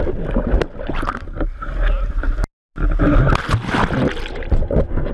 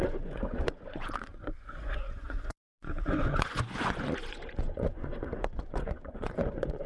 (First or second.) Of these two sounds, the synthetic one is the second